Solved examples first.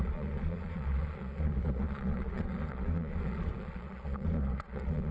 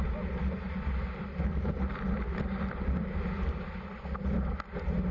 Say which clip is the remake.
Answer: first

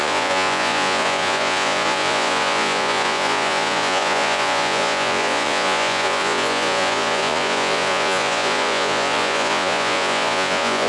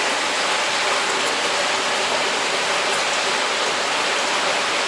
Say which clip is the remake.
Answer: first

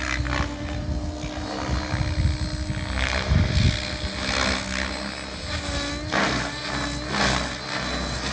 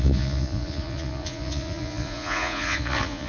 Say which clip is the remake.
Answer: second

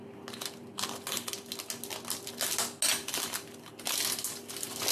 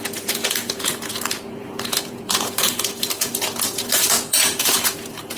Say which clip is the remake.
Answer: second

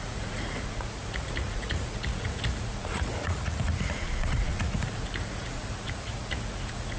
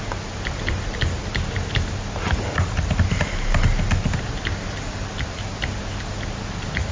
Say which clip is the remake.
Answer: first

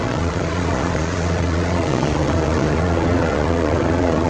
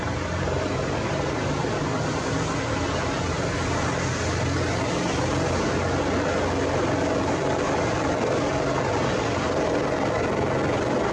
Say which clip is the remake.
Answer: first